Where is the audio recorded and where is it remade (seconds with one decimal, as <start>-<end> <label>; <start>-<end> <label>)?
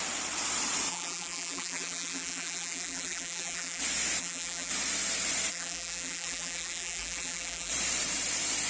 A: 0.0-0.9 recorded; 0.9-3.8 remade; 3.8-4.2 recorded; 4.2-4.7 remade; 4.7-5.5 recorded; 5.5-7.7 remade; 7.7-8.7 recorded